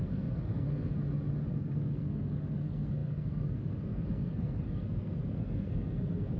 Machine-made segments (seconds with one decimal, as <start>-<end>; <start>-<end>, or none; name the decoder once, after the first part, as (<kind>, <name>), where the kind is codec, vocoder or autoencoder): 0.0-0.9 (codec, SNAC); 1.5-6.4